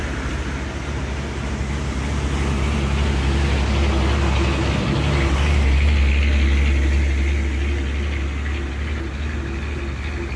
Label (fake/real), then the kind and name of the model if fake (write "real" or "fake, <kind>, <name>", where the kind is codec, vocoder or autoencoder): real